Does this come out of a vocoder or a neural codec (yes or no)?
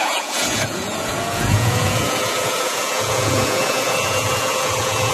yes